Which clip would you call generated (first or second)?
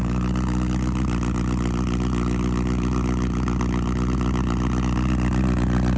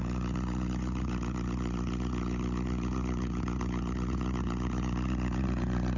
second